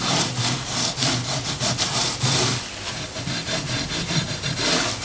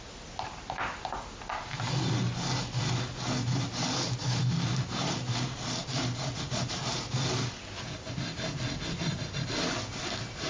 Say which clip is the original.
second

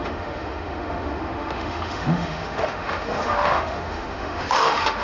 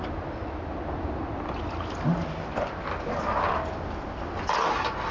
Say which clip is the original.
second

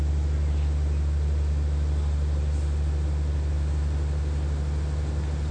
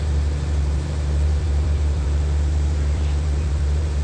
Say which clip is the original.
first